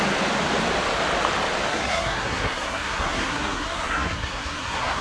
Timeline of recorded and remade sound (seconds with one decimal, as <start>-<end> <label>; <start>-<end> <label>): 0.0-1.7 recorded; 1.7-5.0 remade